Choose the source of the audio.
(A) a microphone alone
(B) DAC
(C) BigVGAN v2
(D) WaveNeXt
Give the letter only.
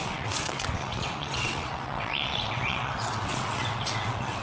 D